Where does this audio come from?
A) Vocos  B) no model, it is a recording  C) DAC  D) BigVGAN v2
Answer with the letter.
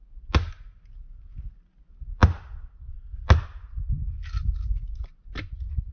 B